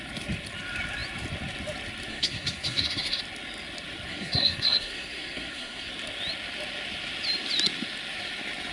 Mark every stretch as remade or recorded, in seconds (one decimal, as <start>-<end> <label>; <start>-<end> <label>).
0.0-2.1 recorded; 2.1-3.2 remade; 3.2-4.1 recorded; 4.1-5.9 remade; 5.9-8.7 recorded